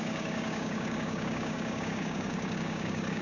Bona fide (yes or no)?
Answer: no